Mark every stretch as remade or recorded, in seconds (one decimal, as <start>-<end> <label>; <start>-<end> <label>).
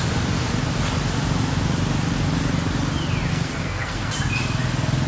0.0-3.3 recorded; 3.3-4.1 remade; 4.1-5.1 recorded